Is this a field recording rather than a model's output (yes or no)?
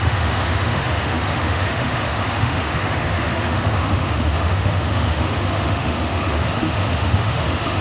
no